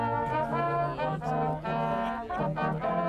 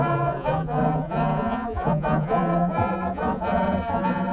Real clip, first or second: first